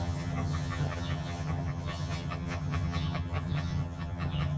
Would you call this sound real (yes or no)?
no